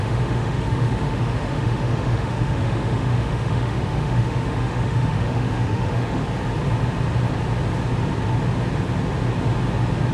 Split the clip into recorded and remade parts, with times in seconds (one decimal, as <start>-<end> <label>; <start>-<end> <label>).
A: 0.0-6.2 remade; 6.2-10.1 recorded